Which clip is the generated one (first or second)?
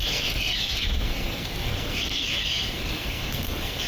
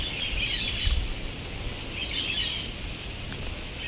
first